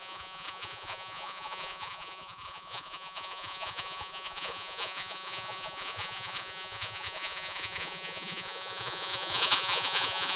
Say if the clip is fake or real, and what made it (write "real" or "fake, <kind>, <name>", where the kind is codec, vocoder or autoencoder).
fake, vocoder, Vocos